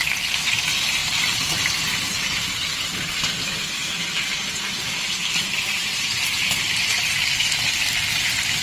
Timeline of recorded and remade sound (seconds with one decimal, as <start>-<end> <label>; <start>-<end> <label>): 0.0-1.0 recorded; 1.0-6.2 remade; 6.2-8.6 recorded